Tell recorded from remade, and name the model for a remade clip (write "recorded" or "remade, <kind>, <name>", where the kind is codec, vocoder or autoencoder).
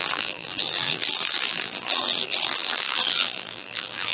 remade, vocoder, BigVGAN v2